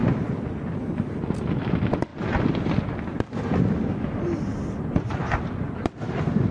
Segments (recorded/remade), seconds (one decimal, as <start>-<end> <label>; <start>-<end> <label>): 0.0-0.7 recorded; 0.7-2.1 remade; 2.1-2.7 recorded; 2.7-6.5 remade